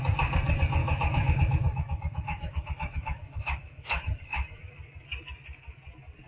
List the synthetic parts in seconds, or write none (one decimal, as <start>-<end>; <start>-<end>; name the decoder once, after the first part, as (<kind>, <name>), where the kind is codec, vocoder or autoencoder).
0.8-4.6 (autoencoder, DAC-VAE)